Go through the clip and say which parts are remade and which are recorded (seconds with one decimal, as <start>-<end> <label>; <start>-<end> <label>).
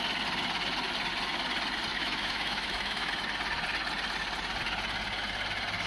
0.0-1.9 recorded; 1.9-3.1 remade; 3.1-5.9 recorded